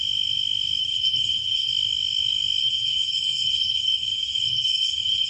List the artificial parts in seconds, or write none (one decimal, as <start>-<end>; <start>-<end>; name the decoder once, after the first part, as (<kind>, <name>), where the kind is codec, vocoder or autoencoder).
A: 0.8-1.7 (codec, SNAC); 2.6-5.3